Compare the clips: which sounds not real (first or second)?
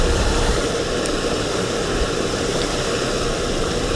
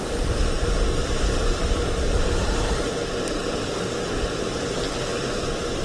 first